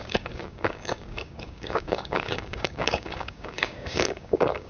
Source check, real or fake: fake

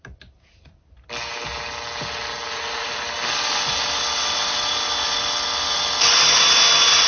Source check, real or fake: real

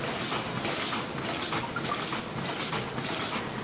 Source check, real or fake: real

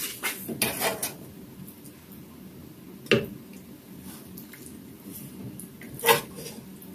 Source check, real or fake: real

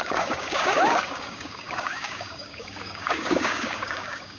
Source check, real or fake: fake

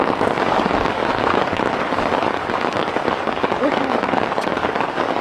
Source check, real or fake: fake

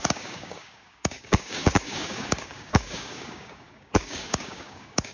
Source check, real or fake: fake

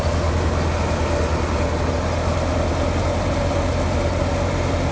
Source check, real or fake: real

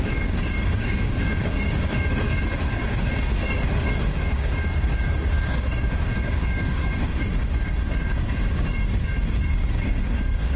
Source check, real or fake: fake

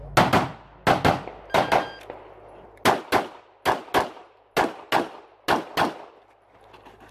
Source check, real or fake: real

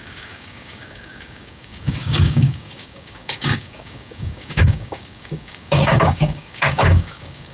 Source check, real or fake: fake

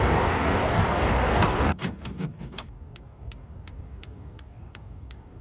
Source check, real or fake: fake